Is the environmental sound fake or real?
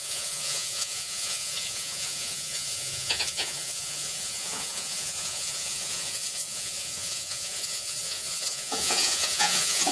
fake